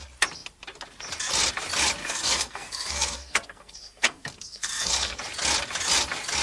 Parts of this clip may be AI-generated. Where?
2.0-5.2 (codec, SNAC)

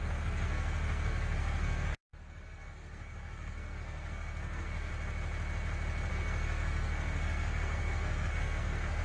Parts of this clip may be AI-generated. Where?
0.0-4.9 (codec, SNAC); 6.1-9.0